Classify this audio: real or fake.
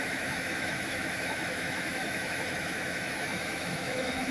fake